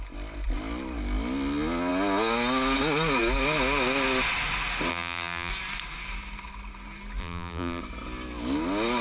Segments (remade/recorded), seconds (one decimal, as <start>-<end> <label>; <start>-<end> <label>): 0.0-4.9 recorded; 4.9-5.5 remade; 5.5-7.2 recorded; 7.2-7.8 remade; 7.8-9.0 recorded